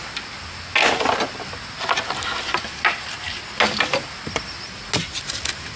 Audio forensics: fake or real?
real